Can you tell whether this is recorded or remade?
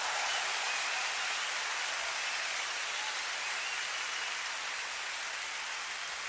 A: recorded